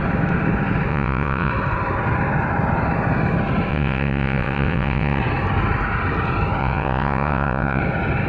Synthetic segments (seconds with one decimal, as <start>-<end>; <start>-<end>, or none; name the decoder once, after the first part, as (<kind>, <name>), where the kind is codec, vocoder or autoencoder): 0.9-1.5 (vocoder, WaveNeXt); 3.7-5.2; 6.6-7.8